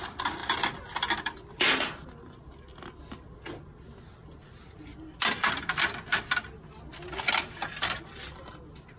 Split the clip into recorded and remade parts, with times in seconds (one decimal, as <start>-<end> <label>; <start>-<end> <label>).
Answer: 0.0-9.0 recorded